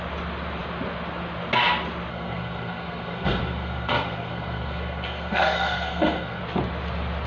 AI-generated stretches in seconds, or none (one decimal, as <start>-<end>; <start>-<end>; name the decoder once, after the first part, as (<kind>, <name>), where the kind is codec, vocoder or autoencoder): 2.1-6.4 (codec, SNAC)